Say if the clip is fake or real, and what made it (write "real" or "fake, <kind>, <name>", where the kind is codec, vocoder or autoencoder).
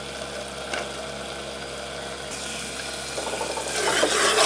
real